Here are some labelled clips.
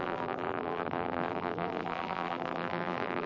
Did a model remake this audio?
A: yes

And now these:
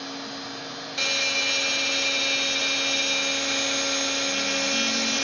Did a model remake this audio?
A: no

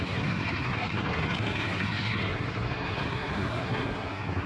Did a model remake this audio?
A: yes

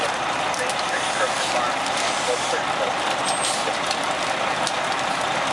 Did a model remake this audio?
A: no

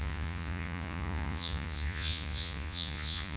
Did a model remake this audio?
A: yes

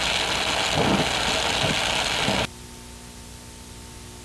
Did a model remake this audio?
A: no